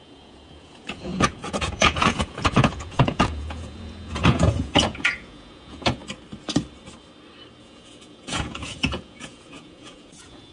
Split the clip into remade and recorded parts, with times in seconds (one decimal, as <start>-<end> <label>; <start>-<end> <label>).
0.0-6.0 remade; 6.0-7.6 recorded; 7.6-10.5 remade